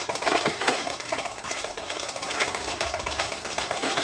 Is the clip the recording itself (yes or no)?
no